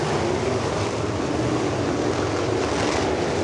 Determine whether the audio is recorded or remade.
recorded